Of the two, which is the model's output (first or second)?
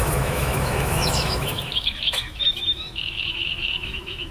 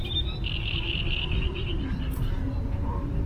first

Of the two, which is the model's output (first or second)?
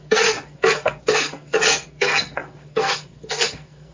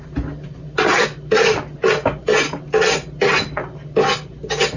first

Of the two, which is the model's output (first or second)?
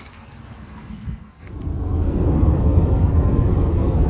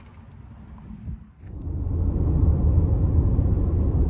first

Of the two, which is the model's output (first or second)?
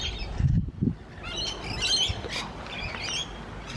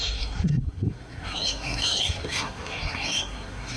second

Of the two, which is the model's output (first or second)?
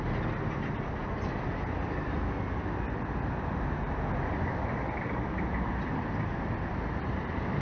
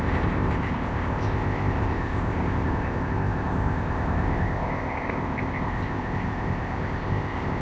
second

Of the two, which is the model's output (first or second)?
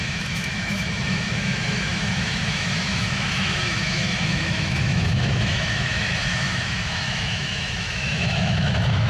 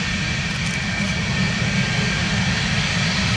first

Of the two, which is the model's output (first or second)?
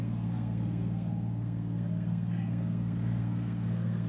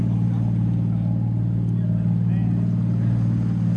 first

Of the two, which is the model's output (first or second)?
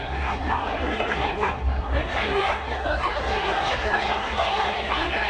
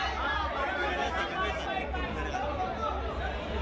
first